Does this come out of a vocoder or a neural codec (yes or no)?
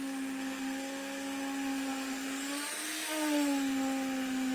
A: no